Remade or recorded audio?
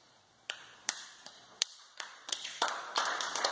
remade